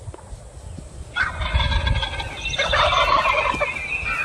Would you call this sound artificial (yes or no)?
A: no